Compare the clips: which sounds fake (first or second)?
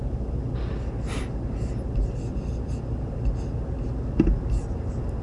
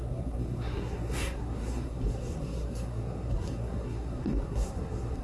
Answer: second